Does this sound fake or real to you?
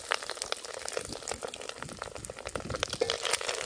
real